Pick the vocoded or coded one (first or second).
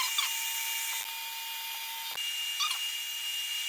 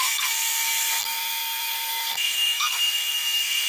second